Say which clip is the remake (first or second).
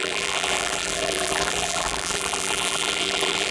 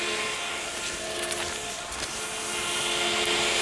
first